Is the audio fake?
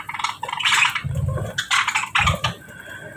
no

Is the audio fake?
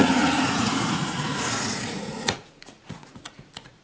yes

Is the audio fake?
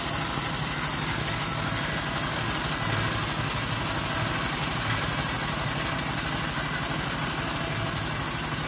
no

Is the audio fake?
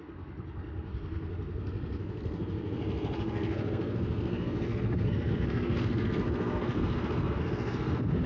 yes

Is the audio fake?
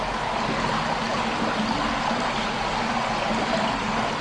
no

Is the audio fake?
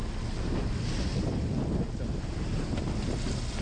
no